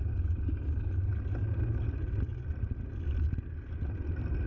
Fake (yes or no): no